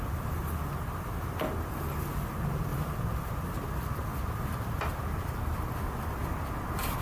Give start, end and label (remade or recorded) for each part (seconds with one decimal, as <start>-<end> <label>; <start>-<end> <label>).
0.0-7.0 recorded